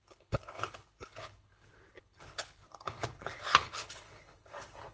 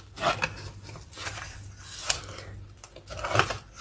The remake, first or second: first